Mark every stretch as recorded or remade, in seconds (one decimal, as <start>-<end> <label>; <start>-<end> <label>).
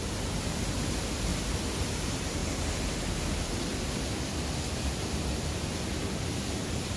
0.0-1.3 remade; 1.3-1.8 recorded; 1.8-3.7 remade; 3.7-4.3 recorded; 4.3-7.0 remade